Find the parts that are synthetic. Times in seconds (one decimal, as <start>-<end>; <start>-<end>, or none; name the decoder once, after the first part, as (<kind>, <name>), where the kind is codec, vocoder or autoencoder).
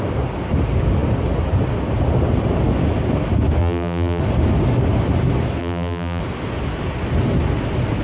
3.6-4.2 (vocoder, BigVGAN v2); 5.6-6.2